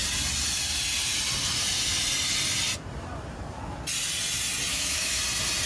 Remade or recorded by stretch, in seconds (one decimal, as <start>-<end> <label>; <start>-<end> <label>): 0.0-4.7 recorded; 4.7-5.2 remade; 5.2-5.7 recorded